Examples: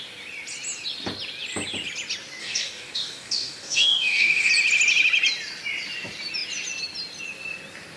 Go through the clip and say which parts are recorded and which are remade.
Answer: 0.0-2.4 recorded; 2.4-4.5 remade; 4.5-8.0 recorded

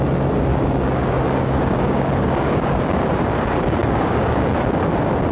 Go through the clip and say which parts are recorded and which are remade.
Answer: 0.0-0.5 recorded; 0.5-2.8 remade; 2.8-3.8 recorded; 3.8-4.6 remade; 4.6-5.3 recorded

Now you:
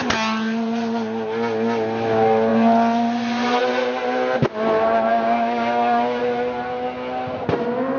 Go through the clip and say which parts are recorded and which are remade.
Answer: 0.0-5.1 recorded; 5.1-6.2 remade; 6.2-8.0 recorded

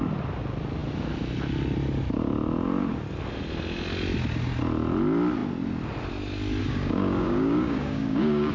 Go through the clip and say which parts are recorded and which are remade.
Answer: 0.0-6.6 recorded; 6.6-8.5 remade